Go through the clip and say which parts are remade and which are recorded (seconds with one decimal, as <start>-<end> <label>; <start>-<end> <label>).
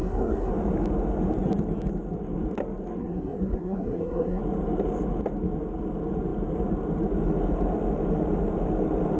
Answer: 0.0-0.5 remade; 0.5-3.0 recorded; 3.0-4.4 remade; 4.4-9.2 recorded